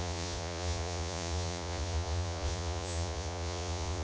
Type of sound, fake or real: fake